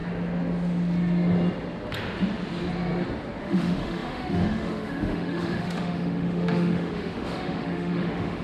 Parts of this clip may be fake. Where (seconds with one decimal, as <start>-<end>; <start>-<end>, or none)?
3.4-8.4